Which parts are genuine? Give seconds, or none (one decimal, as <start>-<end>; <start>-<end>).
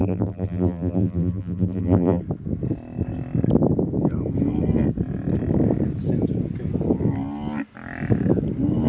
2.2-8.9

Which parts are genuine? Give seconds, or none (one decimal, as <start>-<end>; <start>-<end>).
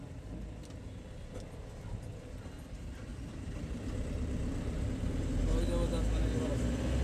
0.0-3.1; 5.4-7.0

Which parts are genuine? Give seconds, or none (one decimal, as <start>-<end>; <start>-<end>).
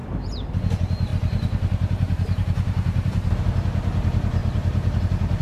0.0-1.1; 3.4-4.4; 5.0-5.4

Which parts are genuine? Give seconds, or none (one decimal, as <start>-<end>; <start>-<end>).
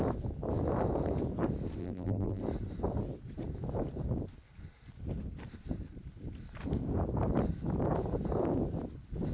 0.0-1.8; 2.4-9.3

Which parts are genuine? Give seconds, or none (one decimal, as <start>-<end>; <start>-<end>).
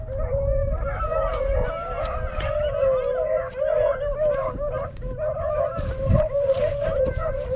1.1-4.7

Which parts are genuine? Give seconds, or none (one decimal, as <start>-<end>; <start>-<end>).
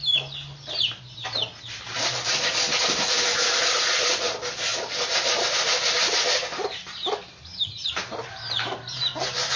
0.0-4.7; 6.4-9.6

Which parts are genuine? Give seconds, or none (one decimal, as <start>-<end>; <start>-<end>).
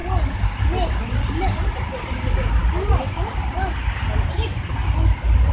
0.0-5.5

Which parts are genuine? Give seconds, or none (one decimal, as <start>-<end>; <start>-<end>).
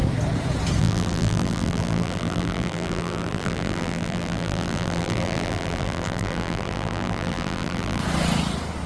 0.0-0.8; 8.0-8.9